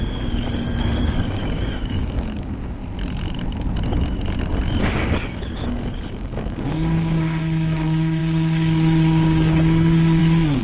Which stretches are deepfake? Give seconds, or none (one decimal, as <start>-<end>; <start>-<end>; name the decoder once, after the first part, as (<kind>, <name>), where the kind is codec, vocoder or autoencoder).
0.0-2.8 (codec, DAC); 4.8-10.6